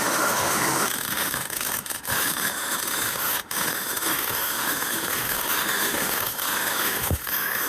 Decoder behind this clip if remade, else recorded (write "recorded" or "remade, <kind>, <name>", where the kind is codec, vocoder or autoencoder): remade, autoencoder, DAC-VAE